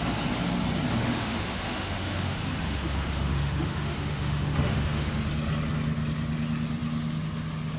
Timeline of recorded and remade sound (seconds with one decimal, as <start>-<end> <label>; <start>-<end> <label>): 0.0-1.0 recorded; 1.0-5.2 remade; 5.2-7.8 recorded